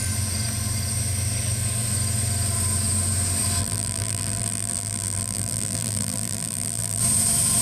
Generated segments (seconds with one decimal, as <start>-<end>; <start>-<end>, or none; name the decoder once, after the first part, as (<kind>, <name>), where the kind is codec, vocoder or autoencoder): 3.6-7.0 (vocoder, BigVGAN v2)